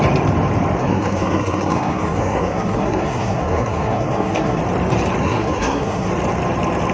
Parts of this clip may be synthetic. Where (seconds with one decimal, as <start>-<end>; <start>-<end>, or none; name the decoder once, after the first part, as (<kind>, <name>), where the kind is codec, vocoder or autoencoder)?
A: 0.8-4.6 (codec, SNAC); 5.2-6.1